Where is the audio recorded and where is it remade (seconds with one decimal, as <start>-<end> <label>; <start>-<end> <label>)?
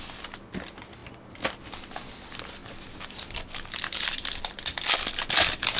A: 0.0-5.8 recorded